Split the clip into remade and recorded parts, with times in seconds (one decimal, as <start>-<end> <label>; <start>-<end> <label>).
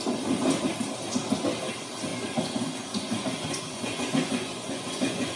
0.0-2.1 recorded; 2.1-5.4 remade